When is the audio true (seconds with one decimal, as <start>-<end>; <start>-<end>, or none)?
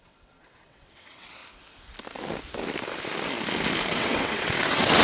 1.4-3.9